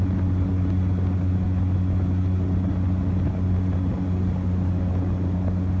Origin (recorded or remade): recorded